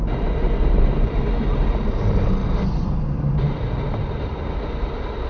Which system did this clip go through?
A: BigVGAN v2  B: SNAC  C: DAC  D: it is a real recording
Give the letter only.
D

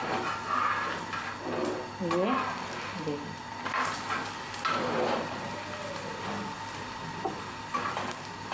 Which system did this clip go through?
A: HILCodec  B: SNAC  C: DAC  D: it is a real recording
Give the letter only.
D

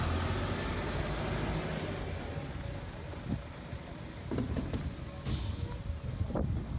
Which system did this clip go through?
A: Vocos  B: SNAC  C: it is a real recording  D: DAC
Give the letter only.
C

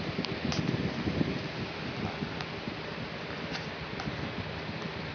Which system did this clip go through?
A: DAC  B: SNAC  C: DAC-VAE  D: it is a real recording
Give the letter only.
D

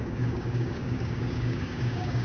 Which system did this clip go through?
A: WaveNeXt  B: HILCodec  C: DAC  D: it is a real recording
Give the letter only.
C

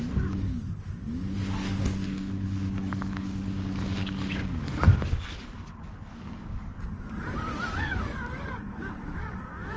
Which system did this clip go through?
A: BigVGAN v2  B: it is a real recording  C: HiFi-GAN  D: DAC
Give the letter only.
D